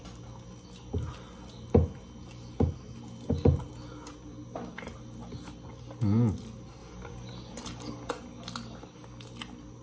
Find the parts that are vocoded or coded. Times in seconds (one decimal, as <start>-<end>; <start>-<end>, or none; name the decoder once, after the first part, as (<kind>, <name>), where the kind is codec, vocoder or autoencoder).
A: none